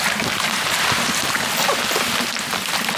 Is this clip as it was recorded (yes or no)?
yes